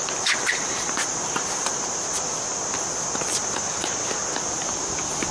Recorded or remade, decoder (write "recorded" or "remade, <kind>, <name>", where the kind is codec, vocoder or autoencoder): recorded